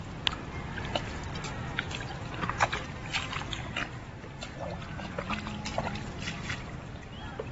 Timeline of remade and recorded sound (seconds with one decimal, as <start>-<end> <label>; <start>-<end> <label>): 0.0-2.1 recorded; 2.1-2.7 remade; 2.7-3.5 recorded; 3.5-4.5 remade; 4.5-7.5 recorded